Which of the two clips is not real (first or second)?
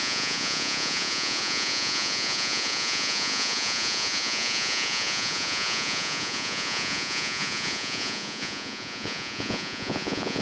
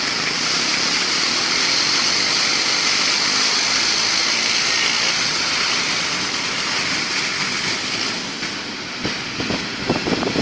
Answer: first